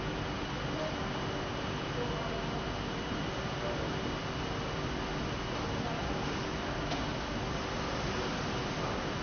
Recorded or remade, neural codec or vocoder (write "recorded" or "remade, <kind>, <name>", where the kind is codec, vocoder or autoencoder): recorded